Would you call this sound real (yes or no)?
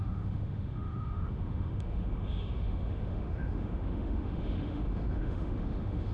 no